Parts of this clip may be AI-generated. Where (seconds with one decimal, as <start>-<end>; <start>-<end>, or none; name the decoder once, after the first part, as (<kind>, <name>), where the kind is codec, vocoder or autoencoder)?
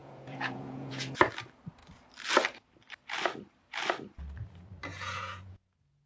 0.0-1.2 (vocoder, Vocos); 4.9-6.1